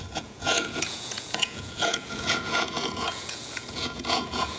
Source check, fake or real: fake